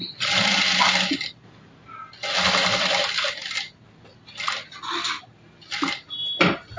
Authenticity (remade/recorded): recorded